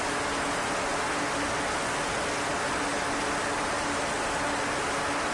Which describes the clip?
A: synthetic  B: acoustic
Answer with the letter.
B